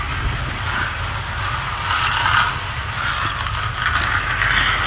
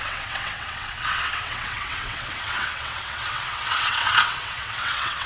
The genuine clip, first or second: first